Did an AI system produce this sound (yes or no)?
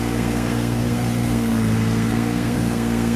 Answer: yes